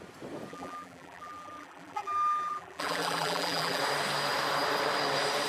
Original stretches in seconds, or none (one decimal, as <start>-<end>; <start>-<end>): 0.0-0.5; 3.8-5.5